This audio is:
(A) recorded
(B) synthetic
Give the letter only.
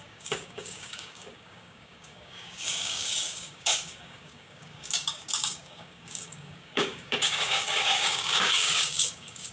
B